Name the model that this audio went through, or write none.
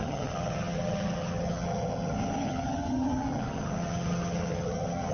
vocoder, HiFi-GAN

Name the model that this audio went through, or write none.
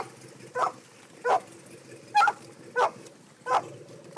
none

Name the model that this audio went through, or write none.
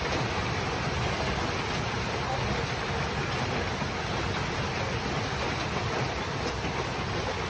none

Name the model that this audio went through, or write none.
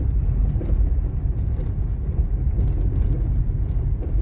none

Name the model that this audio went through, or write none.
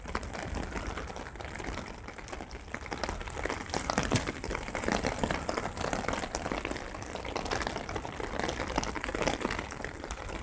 none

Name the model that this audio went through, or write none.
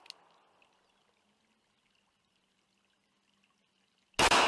none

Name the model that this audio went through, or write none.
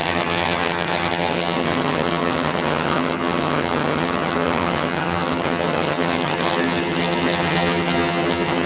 vocoder, HiFi-GAN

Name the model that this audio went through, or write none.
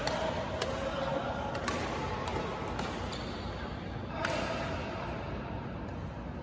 none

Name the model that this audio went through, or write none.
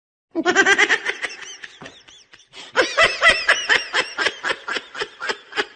none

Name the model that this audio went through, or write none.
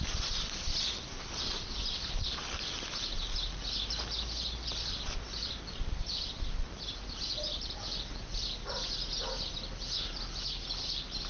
vocoder, BigVGAN v2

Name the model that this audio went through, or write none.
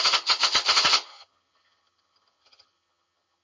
vocoder, HiFi-GAN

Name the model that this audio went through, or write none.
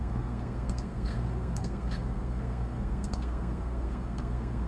codec, SNAC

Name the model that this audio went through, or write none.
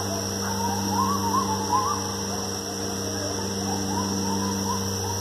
none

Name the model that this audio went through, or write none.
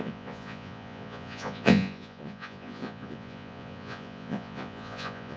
vocoder, Vocos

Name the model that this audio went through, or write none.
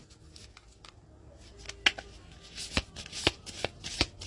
none